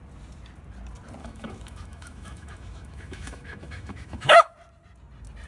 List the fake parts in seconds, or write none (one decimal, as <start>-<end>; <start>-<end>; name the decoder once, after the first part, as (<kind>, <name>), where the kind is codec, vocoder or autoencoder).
1.2-4.5 (autoencoder, DAC-VAE)